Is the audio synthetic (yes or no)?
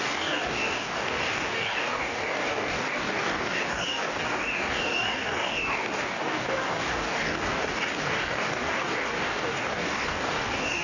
yes